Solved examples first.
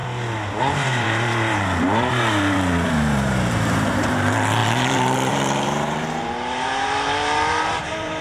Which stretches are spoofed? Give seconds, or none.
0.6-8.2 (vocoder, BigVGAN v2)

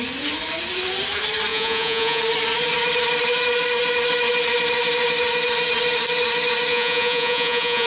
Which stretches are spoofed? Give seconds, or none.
1.5-2.2 (vocoder, Vocos); 6.7-7.9

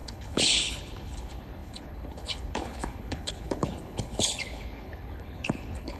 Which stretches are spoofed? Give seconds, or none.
0.0-6.0 (codec, HILCodec)

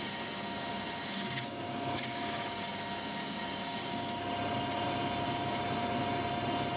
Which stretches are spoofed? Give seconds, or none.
1.0-2.7 (codec, DAC); 3.2-4.2

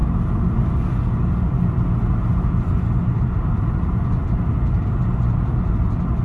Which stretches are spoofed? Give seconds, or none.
none

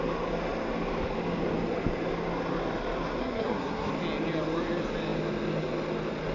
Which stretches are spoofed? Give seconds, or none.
3.2-3.9 (codec, SNAC)

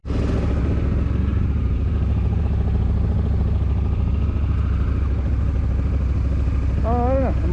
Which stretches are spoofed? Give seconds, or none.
1.3-2.4 (vocoder, BigVGAN v2)

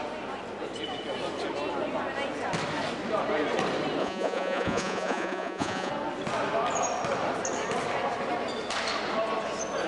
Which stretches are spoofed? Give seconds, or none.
4.0-5.9 (vocoder, Vocos)